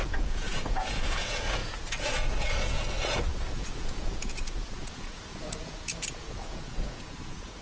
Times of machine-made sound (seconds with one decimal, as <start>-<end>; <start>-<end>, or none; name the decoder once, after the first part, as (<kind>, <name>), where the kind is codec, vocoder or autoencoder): 0.0-7.6 (vocoder, Vocos)

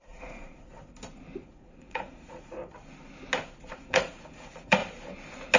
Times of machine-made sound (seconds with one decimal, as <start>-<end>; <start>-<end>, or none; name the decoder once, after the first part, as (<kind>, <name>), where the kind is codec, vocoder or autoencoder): 0.0-0.8 (vocoder, Vocos); 1.4-2.6; 3.7-4.8

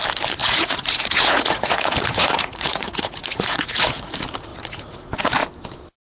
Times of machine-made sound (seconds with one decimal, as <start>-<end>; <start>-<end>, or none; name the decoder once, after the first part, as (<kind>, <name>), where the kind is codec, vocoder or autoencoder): 0.4-4.1 (vocoder, Vocos); 4.5-5.3

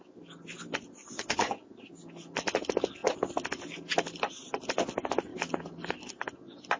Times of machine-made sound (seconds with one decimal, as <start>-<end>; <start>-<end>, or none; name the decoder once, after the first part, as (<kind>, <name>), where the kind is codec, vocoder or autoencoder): 1.0-1.6 (vocoder, Vocos)

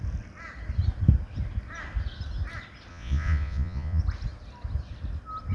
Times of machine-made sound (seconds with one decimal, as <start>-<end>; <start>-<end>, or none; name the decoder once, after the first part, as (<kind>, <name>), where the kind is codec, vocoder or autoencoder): 2.9-4.0 (vocoder, Vocos)

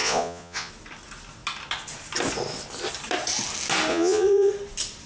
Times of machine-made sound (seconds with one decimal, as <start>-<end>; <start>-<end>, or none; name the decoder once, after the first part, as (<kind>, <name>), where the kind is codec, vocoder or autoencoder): 0.0-0.7 (vocoder, Vocos); 3.9-4.5

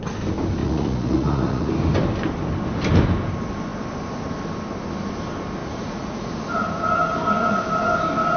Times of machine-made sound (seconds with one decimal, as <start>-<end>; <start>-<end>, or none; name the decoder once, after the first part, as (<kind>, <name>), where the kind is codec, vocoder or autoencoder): 0.6-1.7 (vocoder, Vocos); 5.6-6.3

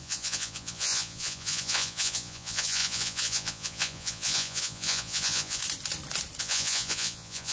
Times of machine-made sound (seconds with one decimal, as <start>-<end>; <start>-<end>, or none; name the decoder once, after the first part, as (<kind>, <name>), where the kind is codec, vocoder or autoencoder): 0.0-5.6 (vocoder, Vocos); 6.4-7.5